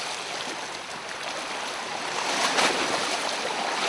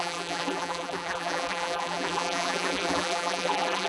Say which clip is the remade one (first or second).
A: second